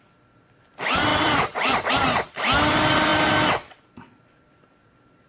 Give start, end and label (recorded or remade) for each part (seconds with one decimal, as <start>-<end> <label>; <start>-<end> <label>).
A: 0.0-1.1 recorded; 1.1-1.9 remade; 1.9-5.3 recorded